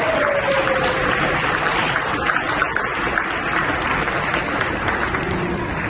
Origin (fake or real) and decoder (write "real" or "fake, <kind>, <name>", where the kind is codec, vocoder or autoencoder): real